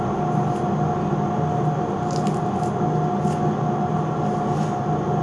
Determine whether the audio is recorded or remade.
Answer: recorded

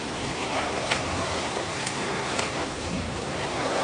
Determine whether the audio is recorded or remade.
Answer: remade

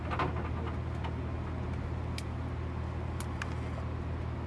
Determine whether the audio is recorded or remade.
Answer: recorded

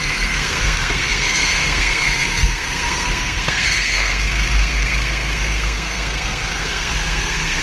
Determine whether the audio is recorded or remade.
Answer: remade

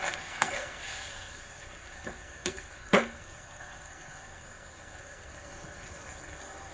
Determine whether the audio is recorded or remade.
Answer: remade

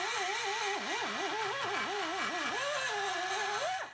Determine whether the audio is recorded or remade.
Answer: recorded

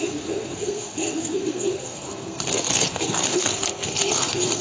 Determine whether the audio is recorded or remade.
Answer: remade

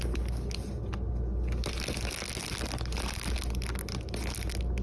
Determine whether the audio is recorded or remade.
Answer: recorded